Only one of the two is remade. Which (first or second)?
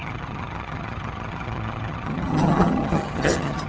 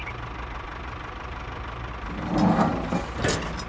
first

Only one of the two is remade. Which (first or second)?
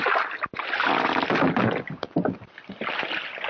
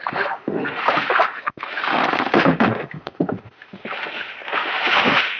second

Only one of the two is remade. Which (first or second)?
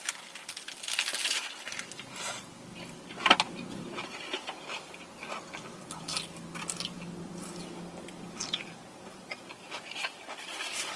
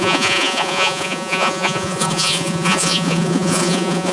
second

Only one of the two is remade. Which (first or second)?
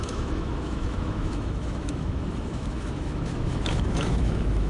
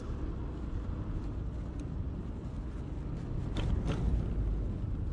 first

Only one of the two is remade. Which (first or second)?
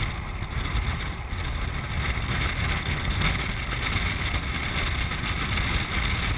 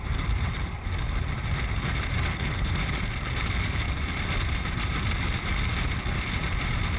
second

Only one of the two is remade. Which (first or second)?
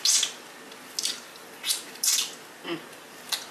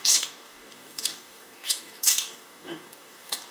second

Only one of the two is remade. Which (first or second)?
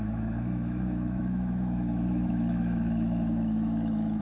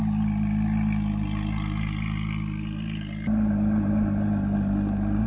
first